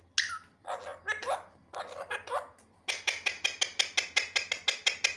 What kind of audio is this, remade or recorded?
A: recorded